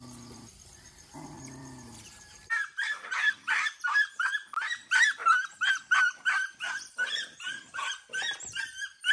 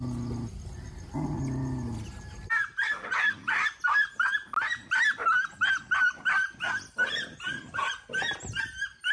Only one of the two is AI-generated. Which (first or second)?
first